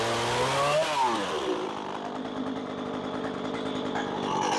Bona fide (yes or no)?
yes